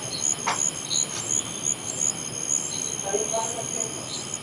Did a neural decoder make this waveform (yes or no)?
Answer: no